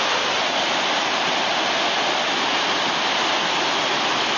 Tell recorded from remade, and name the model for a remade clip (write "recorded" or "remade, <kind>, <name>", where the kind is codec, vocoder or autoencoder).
recorded